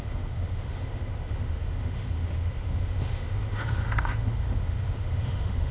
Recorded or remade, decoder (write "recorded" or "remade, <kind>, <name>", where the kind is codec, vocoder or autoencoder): remade, autoencoder, DAC-VAE